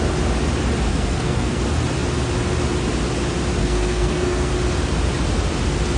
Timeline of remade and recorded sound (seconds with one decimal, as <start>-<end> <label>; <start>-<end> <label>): 0.0-0.9 recorded; 0.9-1.6 remade; 1.6-3.6 recorded; 3.6-4.5 remade; 4.5-6.0 recorded